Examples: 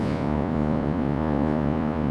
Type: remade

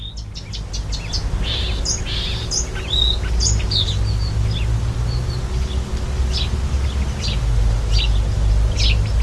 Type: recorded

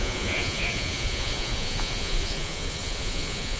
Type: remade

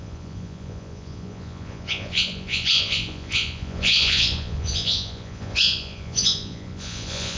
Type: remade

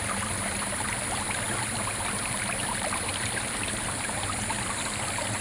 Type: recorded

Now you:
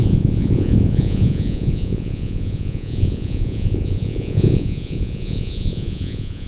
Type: remade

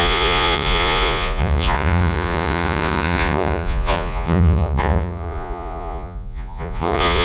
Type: remade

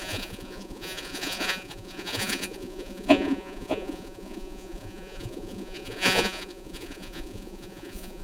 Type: remade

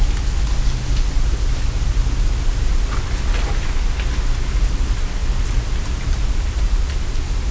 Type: recorded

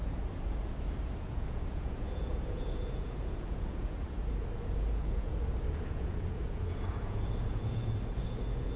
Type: remade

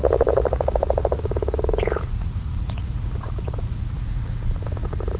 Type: remade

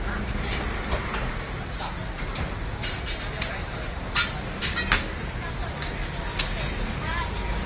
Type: recorded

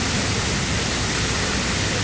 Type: recorded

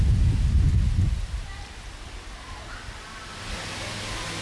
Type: recorded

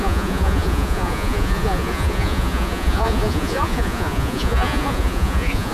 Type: remade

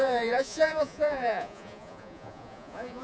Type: remade